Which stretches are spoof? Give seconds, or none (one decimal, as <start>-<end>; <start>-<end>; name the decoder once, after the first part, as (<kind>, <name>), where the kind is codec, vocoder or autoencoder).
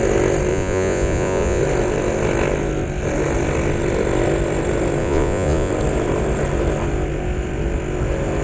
0.5-1.6 (vocoder, Vocos); 5.0-5.7